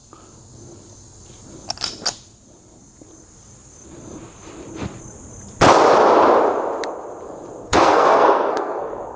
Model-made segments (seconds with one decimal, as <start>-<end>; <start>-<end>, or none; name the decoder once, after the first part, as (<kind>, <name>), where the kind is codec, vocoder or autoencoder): 7.6-9.2 (codec, SNAC)